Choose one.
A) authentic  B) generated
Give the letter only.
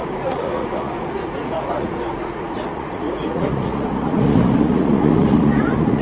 B